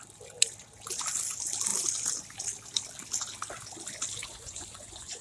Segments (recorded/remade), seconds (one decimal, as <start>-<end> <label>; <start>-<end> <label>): 0.0-4.2 recorded; 4.2-5.2 remade